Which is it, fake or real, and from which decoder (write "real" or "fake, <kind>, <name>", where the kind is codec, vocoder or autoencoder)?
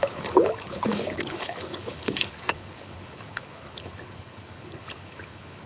fake, codec, HILCodec